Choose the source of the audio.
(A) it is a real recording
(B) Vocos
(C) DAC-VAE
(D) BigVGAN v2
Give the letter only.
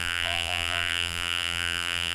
D